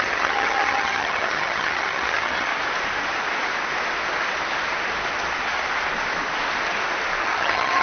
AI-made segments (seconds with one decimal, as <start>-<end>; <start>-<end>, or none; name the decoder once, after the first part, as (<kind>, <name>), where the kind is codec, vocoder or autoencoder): 0.0-2.5 (vocoder, HiFi-GAN); 7.2-7.8